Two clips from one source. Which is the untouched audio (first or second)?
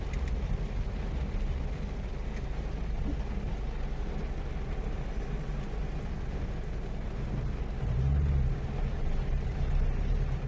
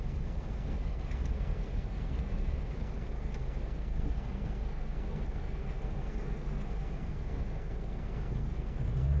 first